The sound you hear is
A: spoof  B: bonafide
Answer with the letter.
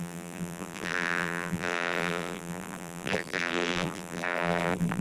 A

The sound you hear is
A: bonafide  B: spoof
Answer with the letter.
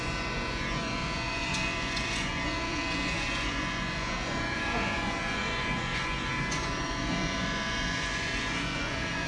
B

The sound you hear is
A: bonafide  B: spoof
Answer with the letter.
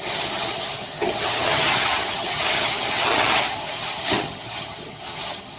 B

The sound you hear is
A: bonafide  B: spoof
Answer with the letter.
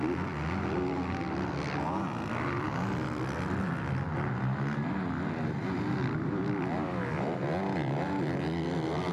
A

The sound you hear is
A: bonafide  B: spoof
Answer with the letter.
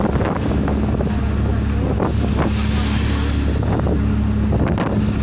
A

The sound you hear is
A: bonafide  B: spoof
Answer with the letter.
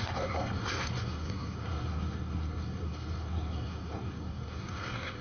B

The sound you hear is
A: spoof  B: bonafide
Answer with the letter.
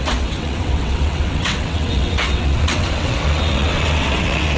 A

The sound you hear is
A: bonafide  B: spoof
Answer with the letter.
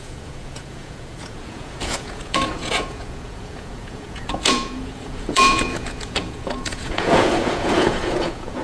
B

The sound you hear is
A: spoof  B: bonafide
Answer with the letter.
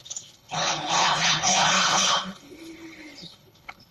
A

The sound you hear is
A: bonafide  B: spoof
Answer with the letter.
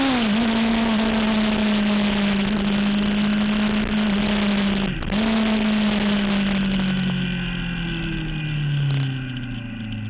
A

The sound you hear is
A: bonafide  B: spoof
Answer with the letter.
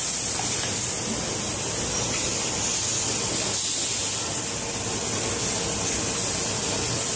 A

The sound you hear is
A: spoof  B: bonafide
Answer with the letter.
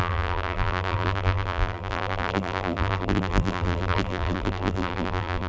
A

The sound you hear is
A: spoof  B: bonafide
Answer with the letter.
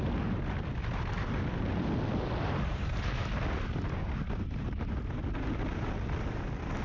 B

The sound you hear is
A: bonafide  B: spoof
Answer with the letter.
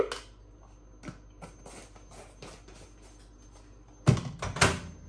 A